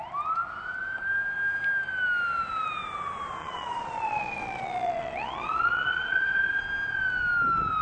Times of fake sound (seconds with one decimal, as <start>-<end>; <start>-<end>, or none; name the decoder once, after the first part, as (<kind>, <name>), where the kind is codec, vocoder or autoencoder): 3.4-6.6 (vocoder, Vocos)